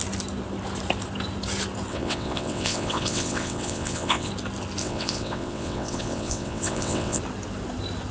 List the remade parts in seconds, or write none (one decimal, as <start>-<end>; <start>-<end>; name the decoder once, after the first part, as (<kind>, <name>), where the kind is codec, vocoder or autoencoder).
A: 1.9-4.3 (vocoder, WaveNeXt); 4.8-7.2